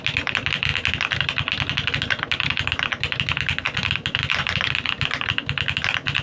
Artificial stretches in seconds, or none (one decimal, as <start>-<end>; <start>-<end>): none